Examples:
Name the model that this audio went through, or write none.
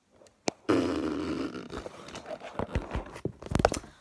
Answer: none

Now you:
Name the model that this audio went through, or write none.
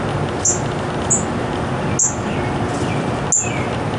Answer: none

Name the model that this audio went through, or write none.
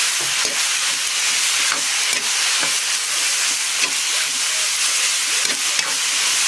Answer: none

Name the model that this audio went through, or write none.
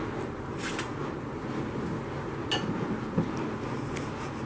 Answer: none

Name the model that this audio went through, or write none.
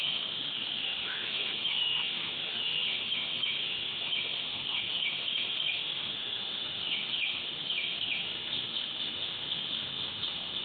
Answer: autoencoder, DAC-VAE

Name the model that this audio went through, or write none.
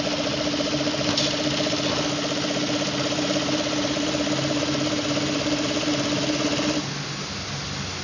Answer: none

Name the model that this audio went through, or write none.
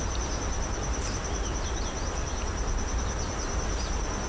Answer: none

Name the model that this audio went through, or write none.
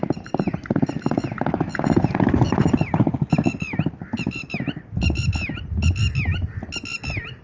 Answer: none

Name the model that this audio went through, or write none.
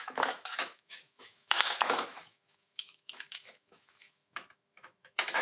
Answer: autoencoder, DAC-VAE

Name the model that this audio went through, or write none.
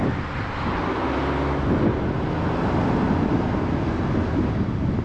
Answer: none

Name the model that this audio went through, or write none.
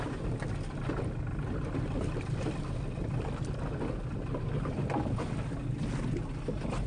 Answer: none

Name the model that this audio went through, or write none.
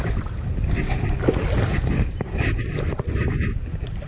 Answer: none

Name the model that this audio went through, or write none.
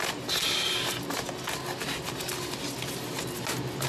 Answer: none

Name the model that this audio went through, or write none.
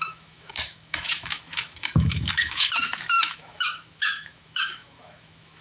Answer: autoencoder, DAC-VAE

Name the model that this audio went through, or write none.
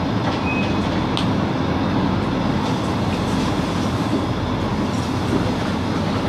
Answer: none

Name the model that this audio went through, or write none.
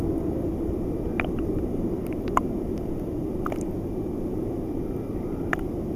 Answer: none